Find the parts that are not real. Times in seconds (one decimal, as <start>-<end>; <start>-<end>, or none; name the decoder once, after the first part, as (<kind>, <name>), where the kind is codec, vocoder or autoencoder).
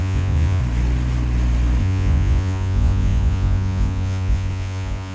0.0-0.6 (vocoder, Vocos); 1.8-5.1